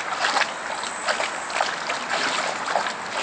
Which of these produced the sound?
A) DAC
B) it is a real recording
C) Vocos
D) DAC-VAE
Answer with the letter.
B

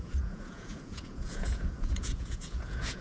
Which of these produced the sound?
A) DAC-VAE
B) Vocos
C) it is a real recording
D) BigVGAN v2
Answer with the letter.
B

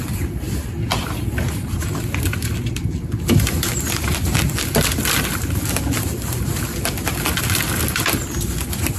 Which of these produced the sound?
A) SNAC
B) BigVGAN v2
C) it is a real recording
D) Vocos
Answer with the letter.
C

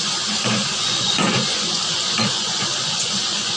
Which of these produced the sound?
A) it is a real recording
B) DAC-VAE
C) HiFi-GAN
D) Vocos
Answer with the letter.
D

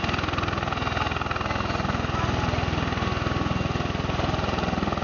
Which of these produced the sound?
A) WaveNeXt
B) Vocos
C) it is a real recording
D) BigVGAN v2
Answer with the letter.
C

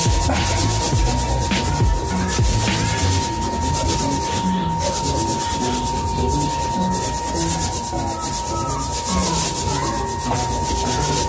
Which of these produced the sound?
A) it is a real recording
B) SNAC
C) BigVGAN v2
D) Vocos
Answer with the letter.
A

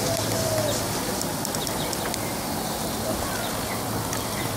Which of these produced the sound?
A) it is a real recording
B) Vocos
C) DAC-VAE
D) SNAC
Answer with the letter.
A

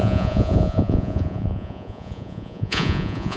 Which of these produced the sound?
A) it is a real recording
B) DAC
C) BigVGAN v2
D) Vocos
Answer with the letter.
D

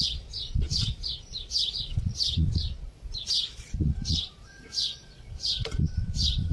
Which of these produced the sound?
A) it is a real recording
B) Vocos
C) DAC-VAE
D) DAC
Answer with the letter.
B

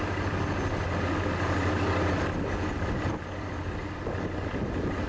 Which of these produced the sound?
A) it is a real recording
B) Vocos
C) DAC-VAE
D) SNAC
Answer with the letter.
A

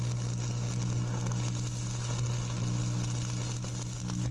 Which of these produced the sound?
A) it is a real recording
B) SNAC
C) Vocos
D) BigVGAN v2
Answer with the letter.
A